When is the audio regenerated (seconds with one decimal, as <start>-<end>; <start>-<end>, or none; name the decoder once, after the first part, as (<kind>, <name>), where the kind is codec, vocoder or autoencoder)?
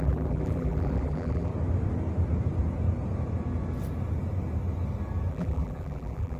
0.0-1.5 (vocoder, BigVGAN v2); 5.3-6.4